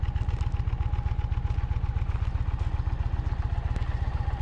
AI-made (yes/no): no